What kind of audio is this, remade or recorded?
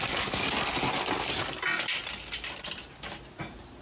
recorded